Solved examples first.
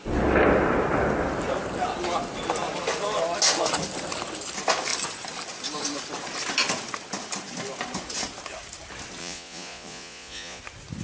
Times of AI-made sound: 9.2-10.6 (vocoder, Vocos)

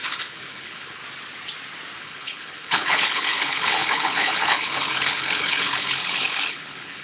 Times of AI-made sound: 0.0-1.0 (codec, HILCodec); 2.0-7.0

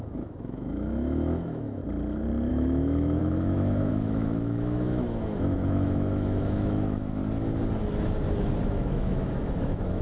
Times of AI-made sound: 0.0-1.8 (autoencoder, DAC-VAE); 2.5-7.2; 8.6-10.0

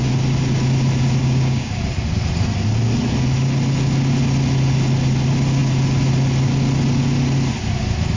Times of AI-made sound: 1.2-1.7 (codec, DAC)

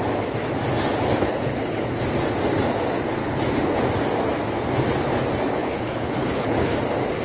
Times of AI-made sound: 0.9-2.0 (codec, HILCodec); 3.2-3.8; 5.6-6.8